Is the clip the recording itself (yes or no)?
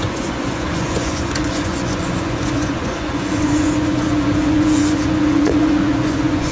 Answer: no